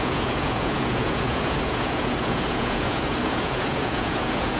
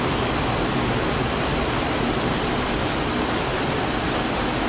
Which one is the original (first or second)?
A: second